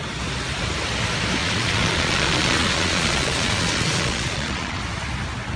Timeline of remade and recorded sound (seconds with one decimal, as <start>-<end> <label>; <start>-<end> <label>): 0.0-1.4 recorded; 1.4-4.8 remade; 4.8-5.6 recorded